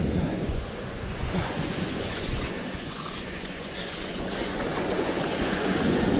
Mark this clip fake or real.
fake